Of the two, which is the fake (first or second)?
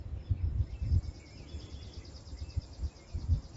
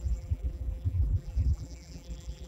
second